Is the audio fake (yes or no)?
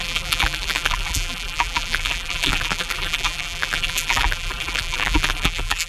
yes